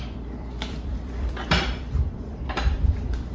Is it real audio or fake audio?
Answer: fake